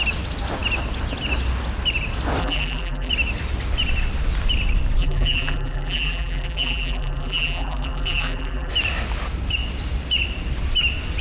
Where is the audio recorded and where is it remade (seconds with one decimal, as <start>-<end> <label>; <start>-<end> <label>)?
0.0-2.4 recorded; 2.4-3.1 remade; 3.1-5.0 recorded; 5.0-8.7 remade; 8.7-11.2 recorded